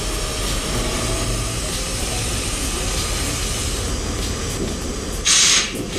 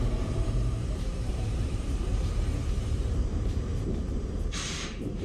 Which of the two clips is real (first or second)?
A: first